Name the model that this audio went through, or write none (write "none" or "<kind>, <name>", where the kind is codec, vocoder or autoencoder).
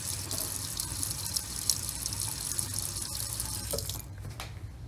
none